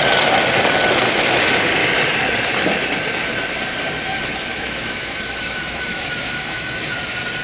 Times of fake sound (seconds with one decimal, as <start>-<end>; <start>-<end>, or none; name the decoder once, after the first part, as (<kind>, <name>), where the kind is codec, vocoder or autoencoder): 4.5-6.8 (autoencoder, DAC-VAE)